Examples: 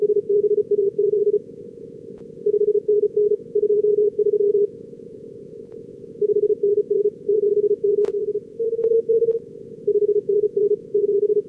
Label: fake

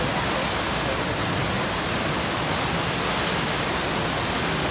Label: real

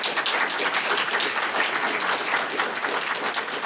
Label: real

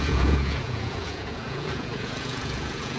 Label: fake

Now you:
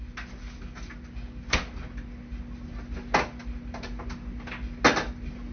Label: real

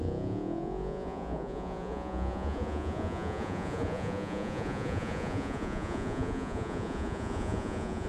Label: fake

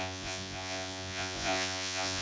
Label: fake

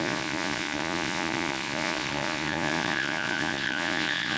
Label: fake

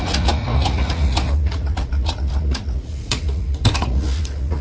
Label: fake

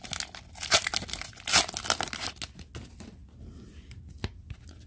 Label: real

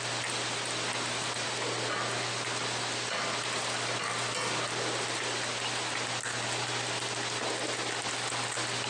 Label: real